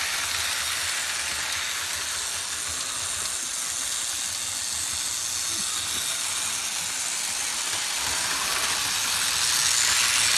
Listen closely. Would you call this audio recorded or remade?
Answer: recorded